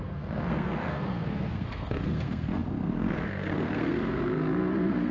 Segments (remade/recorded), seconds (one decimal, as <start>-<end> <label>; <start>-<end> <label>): 0.0-5.1 remade